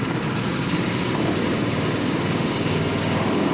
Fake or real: fake